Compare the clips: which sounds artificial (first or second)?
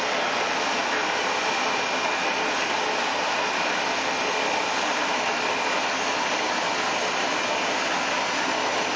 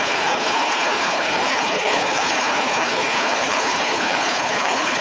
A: second